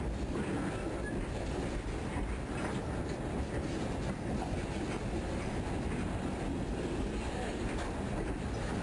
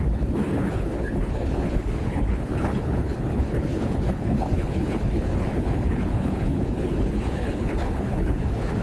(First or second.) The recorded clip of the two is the first